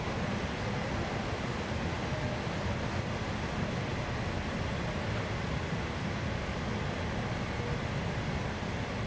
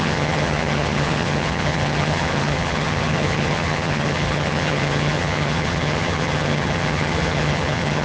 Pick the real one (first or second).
first